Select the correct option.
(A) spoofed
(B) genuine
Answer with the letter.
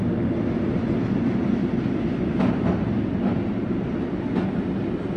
B